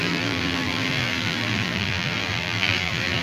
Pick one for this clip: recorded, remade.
remade